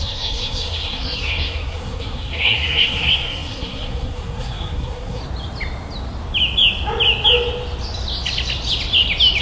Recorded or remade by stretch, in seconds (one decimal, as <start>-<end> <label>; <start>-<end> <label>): 0.0-5.2 remade; 5.2-9.4 recorded